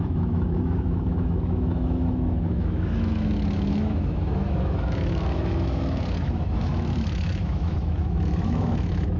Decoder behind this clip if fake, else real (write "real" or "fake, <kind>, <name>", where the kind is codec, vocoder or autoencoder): fake, autoencoder, DAC-VAE